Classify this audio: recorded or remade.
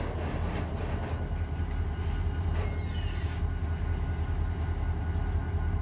recorded